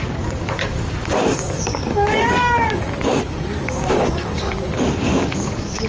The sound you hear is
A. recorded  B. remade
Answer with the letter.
B